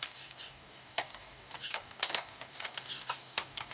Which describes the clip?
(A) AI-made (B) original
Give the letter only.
A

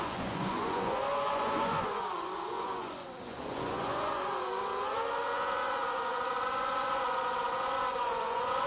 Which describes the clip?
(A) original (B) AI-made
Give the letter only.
B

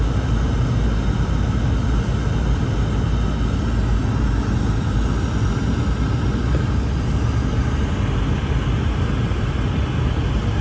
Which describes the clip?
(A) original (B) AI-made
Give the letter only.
A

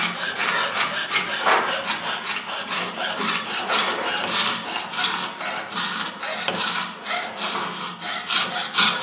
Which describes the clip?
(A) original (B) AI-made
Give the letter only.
A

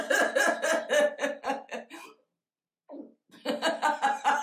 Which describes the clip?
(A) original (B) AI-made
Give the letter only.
A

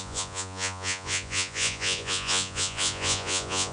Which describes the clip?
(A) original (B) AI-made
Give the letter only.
B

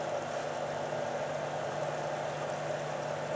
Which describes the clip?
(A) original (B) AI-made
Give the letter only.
A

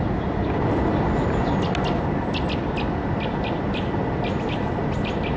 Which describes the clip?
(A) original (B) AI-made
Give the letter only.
A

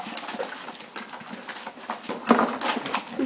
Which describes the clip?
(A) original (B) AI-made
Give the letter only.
A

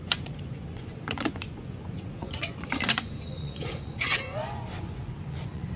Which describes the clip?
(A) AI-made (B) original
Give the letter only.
A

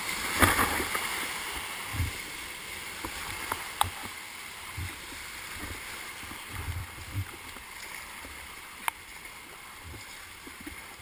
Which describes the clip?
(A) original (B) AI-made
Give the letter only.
A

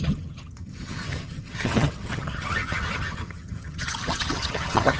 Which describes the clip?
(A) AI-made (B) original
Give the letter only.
A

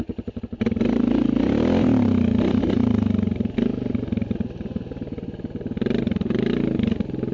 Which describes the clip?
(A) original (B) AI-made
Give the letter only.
A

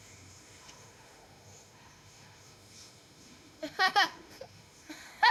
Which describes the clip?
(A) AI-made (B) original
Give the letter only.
A